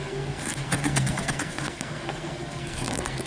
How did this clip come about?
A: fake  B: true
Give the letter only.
A